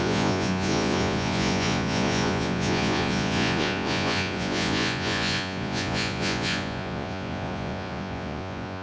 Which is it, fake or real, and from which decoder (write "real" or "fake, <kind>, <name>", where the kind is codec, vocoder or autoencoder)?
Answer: fake, vocoder, Vocos